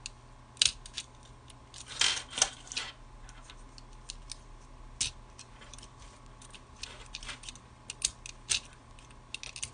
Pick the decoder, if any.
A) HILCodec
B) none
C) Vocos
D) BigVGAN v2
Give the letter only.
B